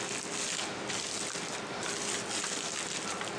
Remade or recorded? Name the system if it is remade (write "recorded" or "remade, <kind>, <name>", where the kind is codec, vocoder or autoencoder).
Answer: recorded